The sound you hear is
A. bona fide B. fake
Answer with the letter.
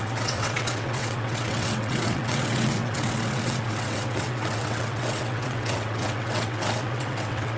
B